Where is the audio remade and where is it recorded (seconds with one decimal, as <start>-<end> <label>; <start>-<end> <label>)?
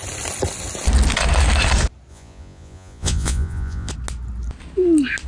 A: 0.0-2.1 recorded; 2.1-3.9 remade; 3.9-5.3 recorded